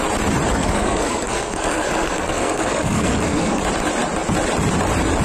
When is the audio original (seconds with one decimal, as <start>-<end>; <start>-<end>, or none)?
0.0-0.5; 3.6-5.2